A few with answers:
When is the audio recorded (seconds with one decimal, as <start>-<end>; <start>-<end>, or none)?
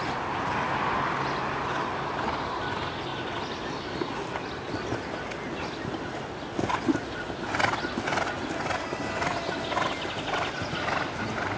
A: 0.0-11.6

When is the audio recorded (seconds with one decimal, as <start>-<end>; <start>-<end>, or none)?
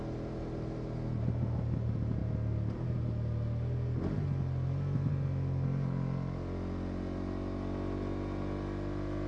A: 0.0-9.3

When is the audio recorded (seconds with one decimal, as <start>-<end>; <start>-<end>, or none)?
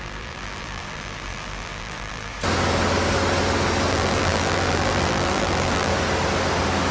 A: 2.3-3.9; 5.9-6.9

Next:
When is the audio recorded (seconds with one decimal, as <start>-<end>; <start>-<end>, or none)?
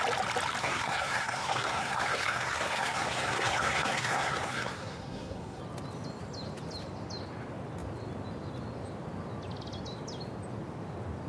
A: 0.0-0.6; 5.6-11.3